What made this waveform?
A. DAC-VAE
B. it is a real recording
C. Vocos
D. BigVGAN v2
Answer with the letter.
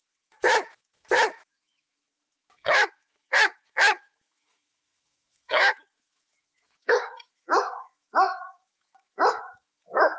A